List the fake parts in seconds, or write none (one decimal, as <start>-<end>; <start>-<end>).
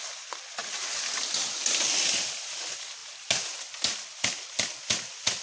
none